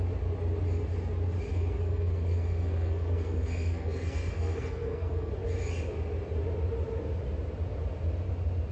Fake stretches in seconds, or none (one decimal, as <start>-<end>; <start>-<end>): 1.5-5.3